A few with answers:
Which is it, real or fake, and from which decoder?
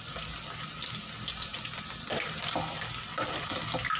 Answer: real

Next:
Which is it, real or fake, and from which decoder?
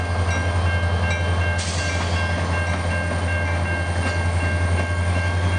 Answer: real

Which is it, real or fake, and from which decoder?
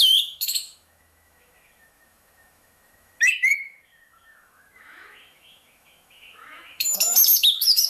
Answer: fake, autoencoder, DAC-VAE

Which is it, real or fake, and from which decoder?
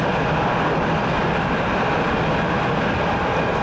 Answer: real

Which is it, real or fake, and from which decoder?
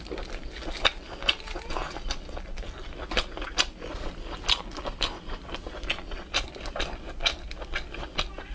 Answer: real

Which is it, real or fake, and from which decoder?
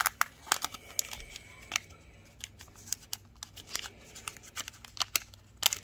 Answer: real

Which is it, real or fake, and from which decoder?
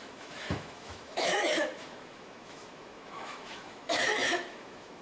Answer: fake, autoencoder, DAC-VAE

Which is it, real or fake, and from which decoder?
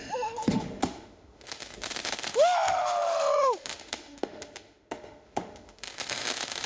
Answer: fake, autoencoder, DAC-VAE